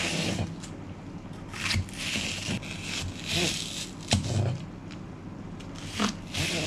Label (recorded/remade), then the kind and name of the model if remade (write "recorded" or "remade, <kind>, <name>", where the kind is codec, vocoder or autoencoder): recorded